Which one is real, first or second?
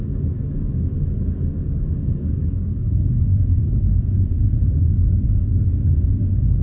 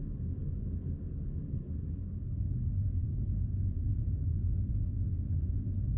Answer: second